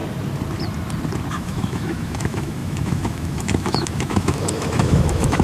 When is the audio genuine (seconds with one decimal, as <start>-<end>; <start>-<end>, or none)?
0.0-1.3